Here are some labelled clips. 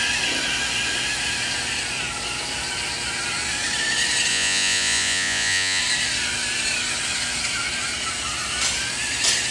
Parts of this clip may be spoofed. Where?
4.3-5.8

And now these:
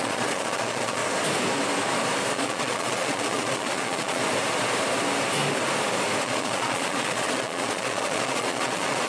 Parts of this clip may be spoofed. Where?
0.0-1.0; 2.3-4.2; 6.2-9.1